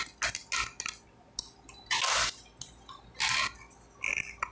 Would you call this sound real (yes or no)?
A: yes